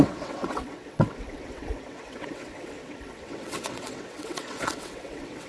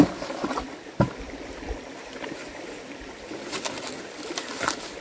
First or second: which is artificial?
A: first